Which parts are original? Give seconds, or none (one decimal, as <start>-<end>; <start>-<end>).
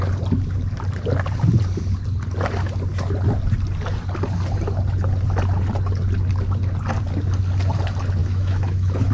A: 0.0-8.2